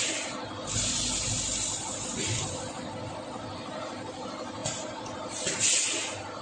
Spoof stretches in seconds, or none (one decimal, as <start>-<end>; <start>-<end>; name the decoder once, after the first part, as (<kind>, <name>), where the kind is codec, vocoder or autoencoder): none

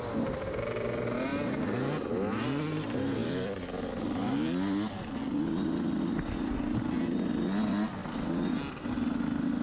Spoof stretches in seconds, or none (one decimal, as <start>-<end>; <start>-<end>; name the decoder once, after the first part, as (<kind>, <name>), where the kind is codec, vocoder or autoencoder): none

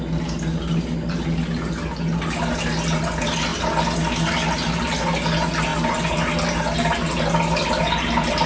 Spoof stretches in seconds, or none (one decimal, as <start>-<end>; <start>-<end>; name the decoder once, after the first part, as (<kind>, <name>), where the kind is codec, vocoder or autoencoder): none

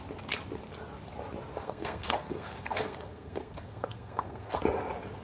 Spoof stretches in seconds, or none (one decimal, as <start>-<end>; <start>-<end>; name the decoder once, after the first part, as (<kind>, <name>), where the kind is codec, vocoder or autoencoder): 1.5-4.6 (codec, SNAC)

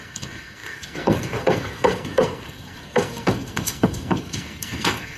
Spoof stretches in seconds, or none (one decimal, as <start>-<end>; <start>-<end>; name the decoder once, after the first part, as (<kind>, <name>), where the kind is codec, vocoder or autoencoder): 0.0-5.2 (codec, SNAC)

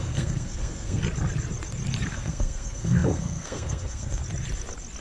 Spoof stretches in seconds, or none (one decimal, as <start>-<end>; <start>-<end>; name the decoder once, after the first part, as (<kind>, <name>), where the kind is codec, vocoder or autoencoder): 0.0-1.0 (codec, SNAC); 2.1-4.2